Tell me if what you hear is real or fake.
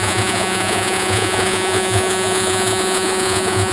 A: fake